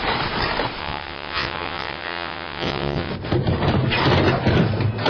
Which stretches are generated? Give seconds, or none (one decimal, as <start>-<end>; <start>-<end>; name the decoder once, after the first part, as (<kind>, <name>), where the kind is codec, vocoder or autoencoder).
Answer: 0.8-3.1 (vocoder, WaveNeXt)